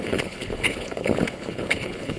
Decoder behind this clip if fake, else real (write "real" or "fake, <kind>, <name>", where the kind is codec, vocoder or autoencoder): fake, codec, HILCodec